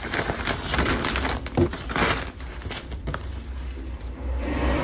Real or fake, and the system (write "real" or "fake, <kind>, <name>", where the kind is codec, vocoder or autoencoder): real